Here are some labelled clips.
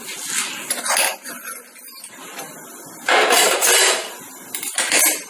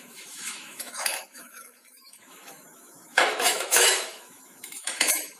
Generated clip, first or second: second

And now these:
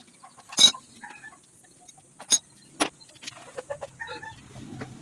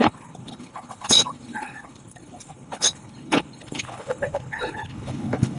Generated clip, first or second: second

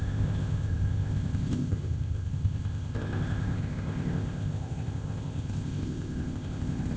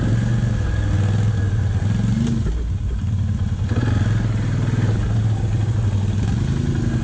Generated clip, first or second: first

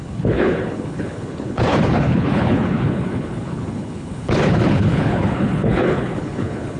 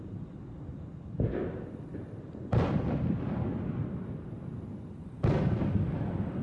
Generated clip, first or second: first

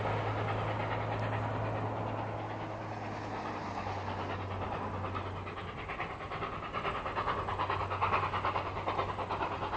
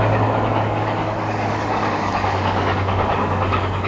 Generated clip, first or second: second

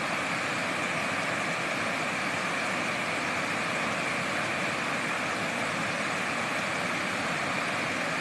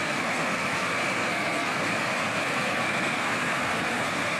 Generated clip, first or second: second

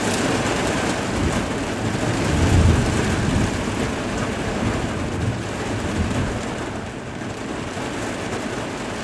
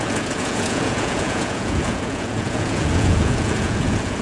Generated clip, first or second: second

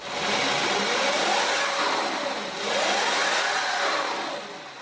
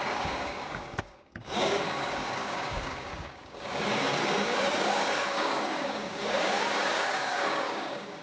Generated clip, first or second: second